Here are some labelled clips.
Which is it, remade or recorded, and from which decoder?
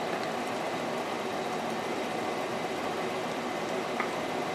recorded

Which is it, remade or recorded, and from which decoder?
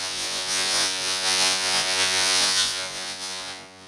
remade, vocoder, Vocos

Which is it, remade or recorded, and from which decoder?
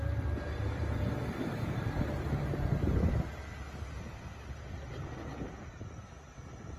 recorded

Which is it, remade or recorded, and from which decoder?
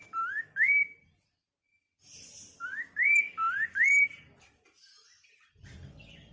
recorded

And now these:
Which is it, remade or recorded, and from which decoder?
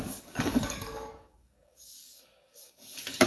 remade, codec, DAC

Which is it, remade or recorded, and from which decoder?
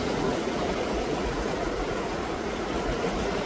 remade, vocoder, Vocos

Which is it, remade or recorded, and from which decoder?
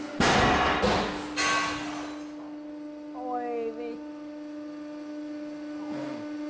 recorded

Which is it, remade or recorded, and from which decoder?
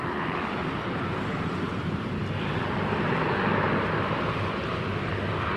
remade, vocoder, BigVGAN v2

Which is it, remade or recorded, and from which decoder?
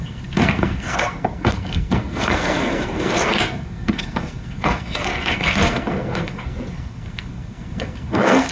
remade, codec, SNAC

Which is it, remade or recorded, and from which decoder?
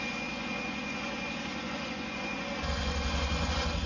remade, vocoder, Vocos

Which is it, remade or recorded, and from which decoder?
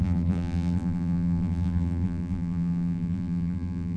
remade, vocoder, BigVGAN v2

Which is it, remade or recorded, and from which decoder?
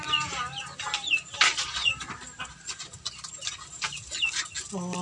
recorded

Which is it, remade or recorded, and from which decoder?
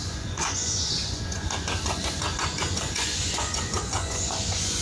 remade, vocoder, Vocos